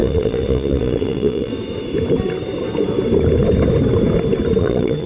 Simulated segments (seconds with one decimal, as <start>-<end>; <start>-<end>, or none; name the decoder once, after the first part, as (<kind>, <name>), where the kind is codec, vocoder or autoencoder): 0.0-1.5 (vocoder, Vocos); 4.6-5.1